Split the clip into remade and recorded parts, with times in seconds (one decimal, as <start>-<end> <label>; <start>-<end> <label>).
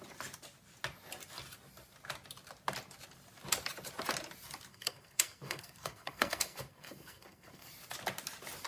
0.0-4.7 recorded; 4.7-7.7 remade; 7.7-8.7 recorded